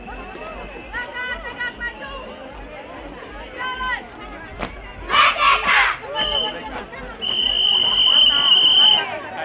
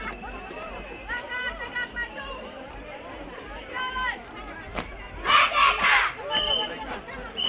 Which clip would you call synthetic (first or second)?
second